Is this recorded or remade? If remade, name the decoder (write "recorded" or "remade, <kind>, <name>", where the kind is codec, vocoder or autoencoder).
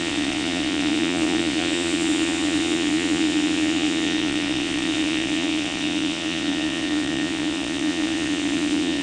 remade, vocoder, Vocos